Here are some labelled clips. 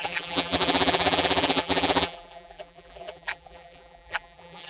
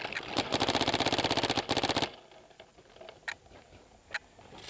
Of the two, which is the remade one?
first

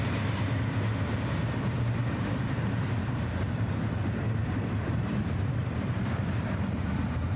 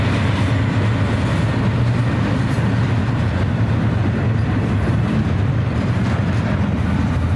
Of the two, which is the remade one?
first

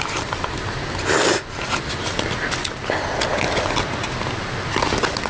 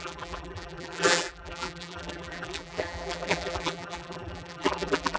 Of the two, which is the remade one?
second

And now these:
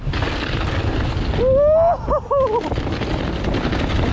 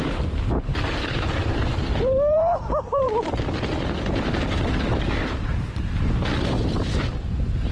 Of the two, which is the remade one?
second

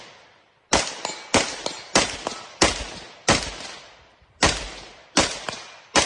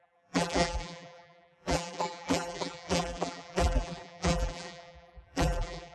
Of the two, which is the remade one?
second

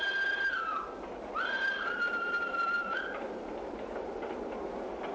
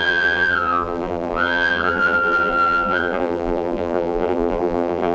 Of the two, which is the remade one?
second